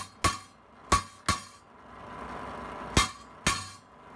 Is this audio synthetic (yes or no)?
no